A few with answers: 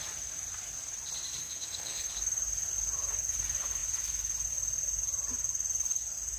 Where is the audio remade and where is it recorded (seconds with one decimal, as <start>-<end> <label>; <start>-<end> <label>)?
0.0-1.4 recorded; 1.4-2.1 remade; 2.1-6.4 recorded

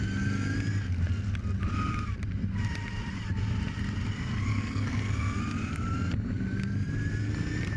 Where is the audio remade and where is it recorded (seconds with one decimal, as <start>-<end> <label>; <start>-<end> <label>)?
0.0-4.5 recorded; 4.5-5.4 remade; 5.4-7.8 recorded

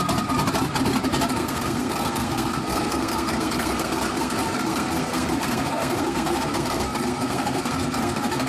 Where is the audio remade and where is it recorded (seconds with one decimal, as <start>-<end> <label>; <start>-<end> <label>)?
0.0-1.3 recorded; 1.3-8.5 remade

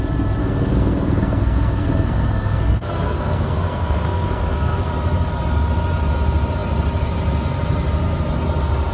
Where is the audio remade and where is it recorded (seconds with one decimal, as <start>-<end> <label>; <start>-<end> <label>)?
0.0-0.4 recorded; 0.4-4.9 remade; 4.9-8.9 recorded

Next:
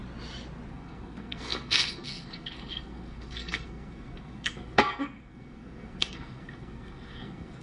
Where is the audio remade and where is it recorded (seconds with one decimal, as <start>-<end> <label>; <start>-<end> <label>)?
0.0-0.7 recorded; 0.7-7.6 remade